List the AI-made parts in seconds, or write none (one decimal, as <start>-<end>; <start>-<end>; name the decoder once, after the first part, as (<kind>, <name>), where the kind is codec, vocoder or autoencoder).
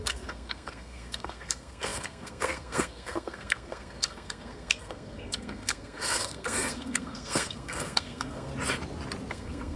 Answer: 0.0-8.5 (codec, SNAC); 9.3-9.8